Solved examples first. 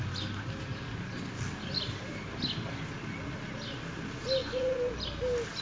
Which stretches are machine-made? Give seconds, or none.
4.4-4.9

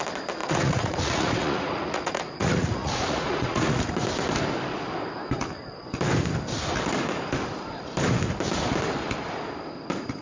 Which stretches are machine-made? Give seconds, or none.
0.4-3.8

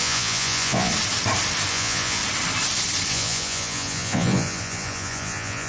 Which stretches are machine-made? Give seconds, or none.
0.0-0.9; 1.7-2.2; 3.1-5.7

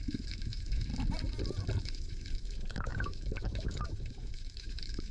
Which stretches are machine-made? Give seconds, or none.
0.0-0.9; 1.8-5.1

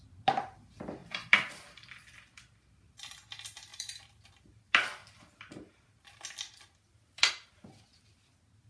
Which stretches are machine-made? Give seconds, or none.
3.7-4.3

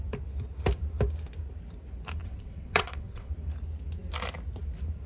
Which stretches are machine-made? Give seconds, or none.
2.2-3.3